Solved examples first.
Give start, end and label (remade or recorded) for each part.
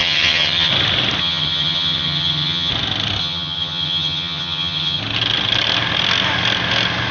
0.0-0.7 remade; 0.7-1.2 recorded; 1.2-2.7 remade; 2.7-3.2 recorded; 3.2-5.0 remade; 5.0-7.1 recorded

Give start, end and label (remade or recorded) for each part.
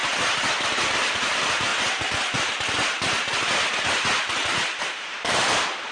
0.0-0.9 recorded; 0.9-1.7 remade; 1.7-4.8 recorded; 4.8-5.9 remade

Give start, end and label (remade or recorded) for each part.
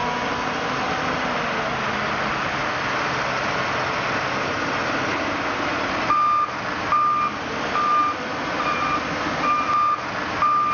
0.0-8.0 recorded; 8.0-9.7 remade; 9.7-10.7 recorded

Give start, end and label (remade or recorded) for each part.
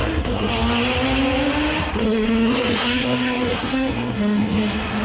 0.0-0.5 remade; 0.5-1.9 recorded; 1.9-5.0 remade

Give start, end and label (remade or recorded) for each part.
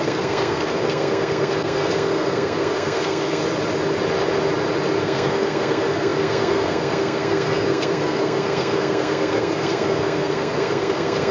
0.0-3.4 remade; 3.4-5.0 recorded; 5.0-11.3 remade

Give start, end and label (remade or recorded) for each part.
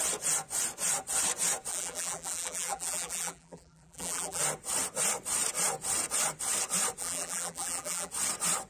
0.0-1.7 recorded; 1.7-4.4 remade; 4.4-7.0 recorded; 7.0-8.1 remade; 8.1-8.7 recorded